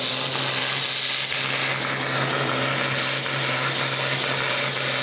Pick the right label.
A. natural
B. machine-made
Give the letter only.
A